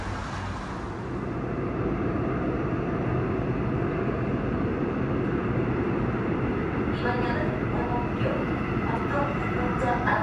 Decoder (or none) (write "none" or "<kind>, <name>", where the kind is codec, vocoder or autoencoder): none